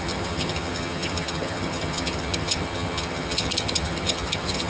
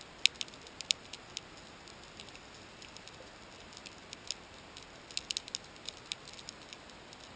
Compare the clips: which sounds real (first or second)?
second